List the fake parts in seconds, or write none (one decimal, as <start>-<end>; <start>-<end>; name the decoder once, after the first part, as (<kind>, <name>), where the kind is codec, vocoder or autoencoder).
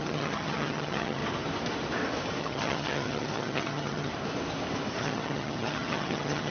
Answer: 0.0-1.2 (vocoder, HiFi-GAN); 2.4-4.1; 5.0-6.5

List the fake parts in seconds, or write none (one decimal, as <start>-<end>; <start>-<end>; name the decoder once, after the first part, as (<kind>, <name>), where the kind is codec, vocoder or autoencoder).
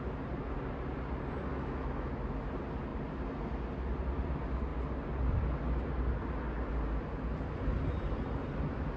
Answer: 1.5-2.1 (autoencoder, DAC-VAE)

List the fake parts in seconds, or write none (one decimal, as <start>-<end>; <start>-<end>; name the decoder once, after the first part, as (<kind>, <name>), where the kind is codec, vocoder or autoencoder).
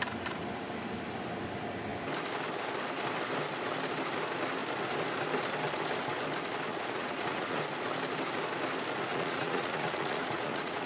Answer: 6.7-7.6 (vocoder, Vocos); 9.1-10.9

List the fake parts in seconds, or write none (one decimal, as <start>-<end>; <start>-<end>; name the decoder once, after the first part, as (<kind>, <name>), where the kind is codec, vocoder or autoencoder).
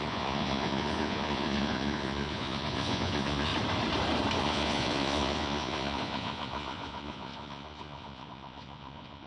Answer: 0.0-3.5 (vocoder, Vocos); 4.4-9.3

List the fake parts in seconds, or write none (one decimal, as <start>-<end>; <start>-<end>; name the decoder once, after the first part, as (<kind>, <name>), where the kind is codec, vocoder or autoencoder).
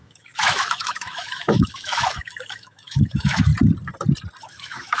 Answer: 0.0-3.5 (autoencoder, DAC-VAE); 4.4-5.0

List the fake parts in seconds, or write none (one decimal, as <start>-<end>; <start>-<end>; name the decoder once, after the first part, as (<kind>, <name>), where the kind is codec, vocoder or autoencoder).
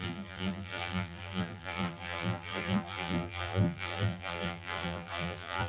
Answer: 0.0-5.7 (vocoder, BigVGAN v2)